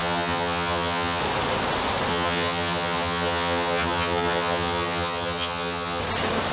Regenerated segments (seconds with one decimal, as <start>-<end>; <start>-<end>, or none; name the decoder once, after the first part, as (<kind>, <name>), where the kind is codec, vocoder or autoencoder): 0.0-1.2 (vocoder, HiFi-GAN); 2.1-6.0